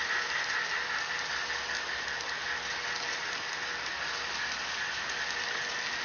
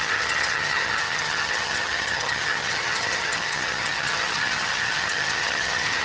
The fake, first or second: second